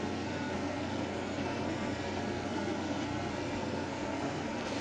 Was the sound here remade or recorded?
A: remade